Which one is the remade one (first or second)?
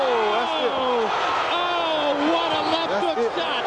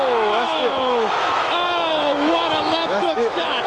second